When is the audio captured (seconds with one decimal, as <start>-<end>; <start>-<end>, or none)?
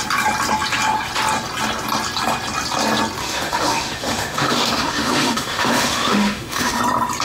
0.0-3.2; 6.8-7.2